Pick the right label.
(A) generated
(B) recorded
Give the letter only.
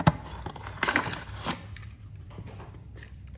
B